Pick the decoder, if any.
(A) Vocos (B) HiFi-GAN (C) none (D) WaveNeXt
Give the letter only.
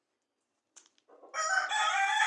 C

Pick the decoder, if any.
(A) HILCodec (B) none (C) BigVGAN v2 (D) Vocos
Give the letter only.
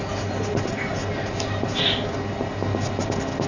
B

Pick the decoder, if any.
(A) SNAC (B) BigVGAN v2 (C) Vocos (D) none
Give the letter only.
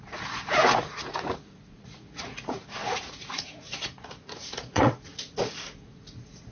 C